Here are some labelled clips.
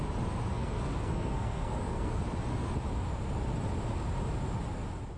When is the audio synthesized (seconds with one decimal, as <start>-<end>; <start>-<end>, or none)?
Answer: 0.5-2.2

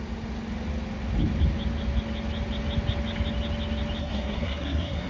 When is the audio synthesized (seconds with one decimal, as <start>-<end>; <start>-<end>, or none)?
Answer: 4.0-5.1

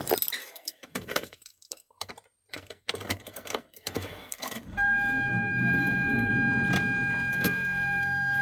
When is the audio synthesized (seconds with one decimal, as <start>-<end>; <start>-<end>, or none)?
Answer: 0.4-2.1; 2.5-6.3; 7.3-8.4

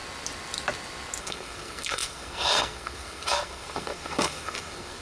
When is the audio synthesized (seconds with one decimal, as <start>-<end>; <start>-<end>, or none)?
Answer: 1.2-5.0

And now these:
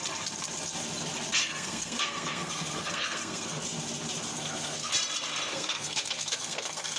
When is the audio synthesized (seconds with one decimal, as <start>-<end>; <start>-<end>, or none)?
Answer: 1.4-3.6; 4.3-4.9; 5.5-7.0

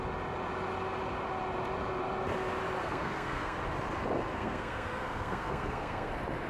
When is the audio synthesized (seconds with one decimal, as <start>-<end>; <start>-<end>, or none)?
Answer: 2.8-3.6; 4.3-6.1